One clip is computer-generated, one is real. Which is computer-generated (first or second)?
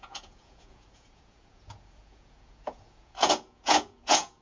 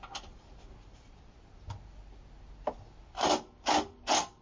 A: first